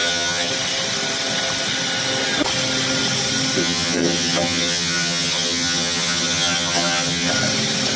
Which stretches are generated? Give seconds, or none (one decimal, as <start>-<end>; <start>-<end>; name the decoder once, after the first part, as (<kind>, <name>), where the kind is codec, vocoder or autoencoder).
0.0-0.5 (vocoder, HiFi-GAN); 3.6-7.3